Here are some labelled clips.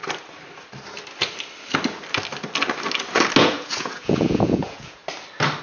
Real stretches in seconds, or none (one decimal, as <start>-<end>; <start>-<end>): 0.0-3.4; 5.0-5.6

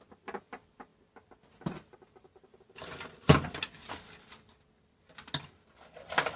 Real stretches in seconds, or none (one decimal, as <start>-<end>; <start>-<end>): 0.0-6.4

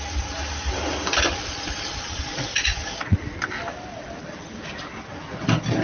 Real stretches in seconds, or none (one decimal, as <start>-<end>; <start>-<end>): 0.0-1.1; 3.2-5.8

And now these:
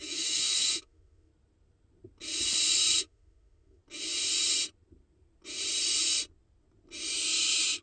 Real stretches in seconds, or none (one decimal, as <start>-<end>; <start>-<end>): 1.3-3.0; 3.8-7.8

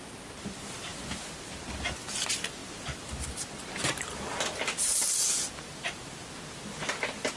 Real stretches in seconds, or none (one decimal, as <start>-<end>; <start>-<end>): 0.0-7.4